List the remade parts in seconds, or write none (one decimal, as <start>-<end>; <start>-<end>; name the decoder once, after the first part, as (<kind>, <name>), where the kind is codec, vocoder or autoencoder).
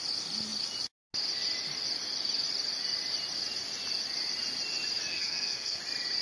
5.1-5.8 (codec, SNAC)